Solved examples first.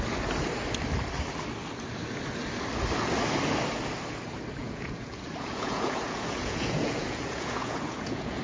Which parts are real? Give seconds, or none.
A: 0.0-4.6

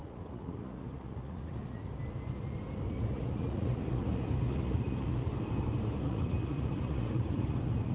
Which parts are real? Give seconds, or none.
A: 1.9-2.9; 5.3-6.0

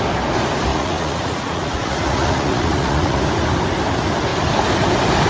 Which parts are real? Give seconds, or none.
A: 0.0-0.7; 3.2-5.3

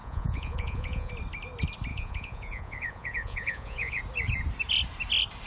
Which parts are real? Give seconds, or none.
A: 1.1-1.9; 4.0-5.5

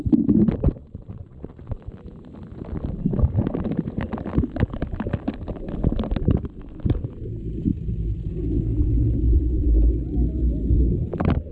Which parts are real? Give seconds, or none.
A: 0.0-0.8; 1.8-11.5

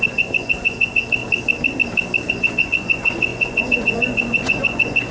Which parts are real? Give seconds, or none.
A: 1.2-2.3

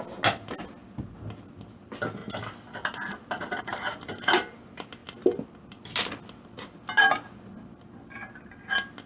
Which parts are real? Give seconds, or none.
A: 0.0-9.1

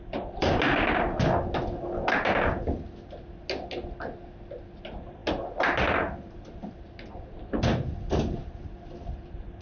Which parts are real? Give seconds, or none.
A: 0.0-9.6